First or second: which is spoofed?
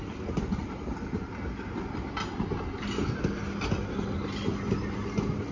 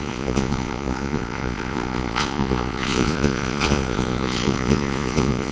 second